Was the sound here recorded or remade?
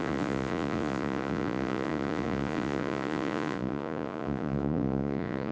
remade